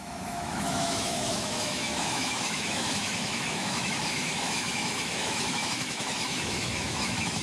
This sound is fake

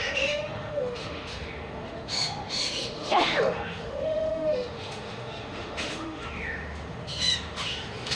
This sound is fake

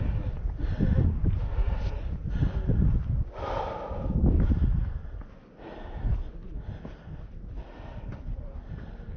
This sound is real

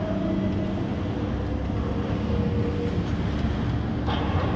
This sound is real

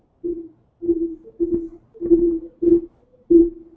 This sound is real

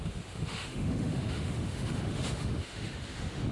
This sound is fake